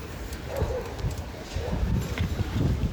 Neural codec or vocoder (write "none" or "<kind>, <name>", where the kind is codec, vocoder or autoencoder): vocoder, BigVGAN v2